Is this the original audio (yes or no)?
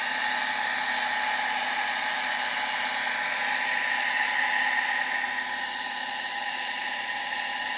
yes